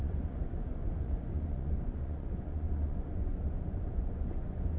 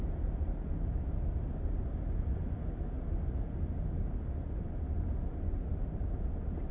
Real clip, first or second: second